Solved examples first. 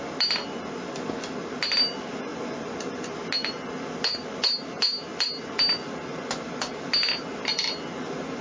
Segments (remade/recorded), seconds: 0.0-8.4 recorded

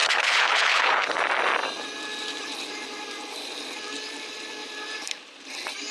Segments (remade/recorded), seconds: 0.0-1.1 remade; 1.1-5.9 recorded

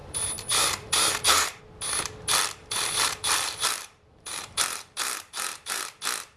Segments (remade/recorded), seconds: 0.0-1.6 remade; 1.6-2.6 recorded; 2.6-5.8 remade; 5.8-6.4 recorded

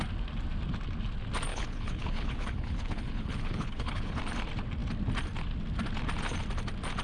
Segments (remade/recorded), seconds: 0.0-1.5 recorded; 1.5-4.2 remade; 4.2-7.0 recorded

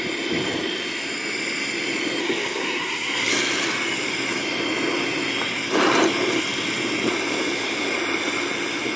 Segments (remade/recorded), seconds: 0.0-2.2 recorded; 2.2-3.3 remade; 3.3-9.0 recorded